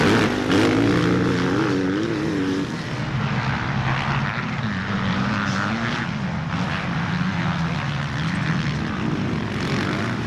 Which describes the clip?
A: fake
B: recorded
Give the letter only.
B